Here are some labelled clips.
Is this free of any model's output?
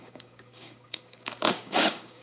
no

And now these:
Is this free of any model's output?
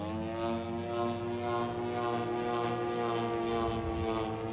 yes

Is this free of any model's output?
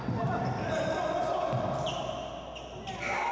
yes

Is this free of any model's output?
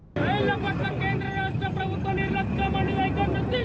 yes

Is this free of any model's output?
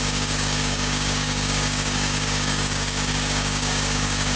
no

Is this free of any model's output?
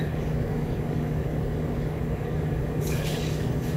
no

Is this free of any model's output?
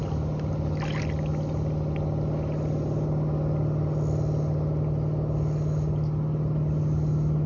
yes